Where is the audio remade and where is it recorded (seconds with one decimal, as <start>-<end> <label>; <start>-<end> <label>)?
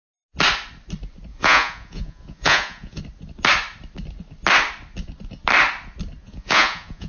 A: 0.0-1.3 recorded; 1.3-3.0 remade; 3.0-6.2 recorded; 6.2-7.1 remade